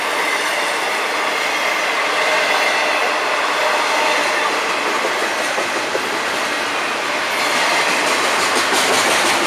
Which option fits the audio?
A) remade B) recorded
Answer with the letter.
B